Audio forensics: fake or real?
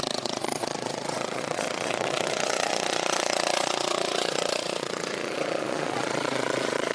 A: fake